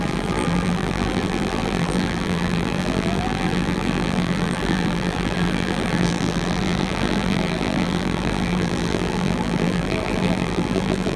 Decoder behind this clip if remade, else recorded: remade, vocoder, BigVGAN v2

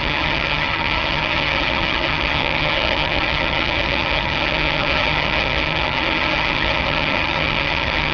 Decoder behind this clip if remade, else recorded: remade, vocoder, HiFi-GAN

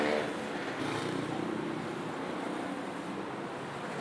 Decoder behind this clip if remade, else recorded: recorded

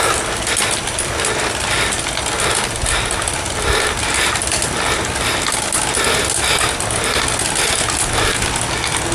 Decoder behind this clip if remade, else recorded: recorded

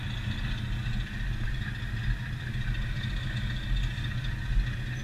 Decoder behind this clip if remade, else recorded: recorded